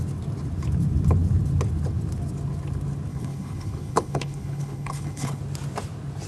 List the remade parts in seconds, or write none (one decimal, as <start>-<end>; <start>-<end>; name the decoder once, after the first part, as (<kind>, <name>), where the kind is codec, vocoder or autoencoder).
3.1-5.4 (codec, HILCodec)